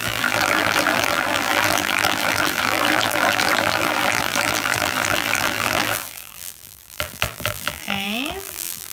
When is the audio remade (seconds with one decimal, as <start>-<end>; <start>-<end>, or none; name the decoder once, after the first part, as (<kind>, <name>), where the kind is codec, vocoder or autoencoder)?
0.0-8.9 (vocoder, BigVGAN v2)